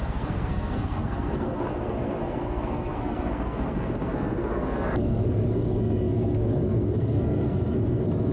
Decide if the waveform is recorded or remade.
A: remade